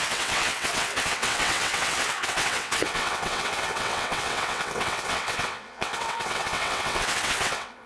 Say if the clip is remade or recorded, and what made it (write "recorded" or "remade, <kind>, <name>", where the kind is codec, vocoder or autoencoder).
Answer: remade, vocoder, WaveNeXt